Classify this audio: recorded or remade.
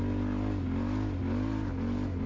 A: recorded